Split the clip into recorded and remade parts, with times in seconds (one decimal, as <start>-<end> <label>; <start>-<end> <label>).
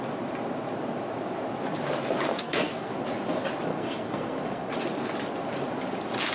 0.0-2.3 recorded; 2.3-2.9 remade; 2.9-3.7 recorded; 3.7-4.7 remade; 4.7-6.3 recorded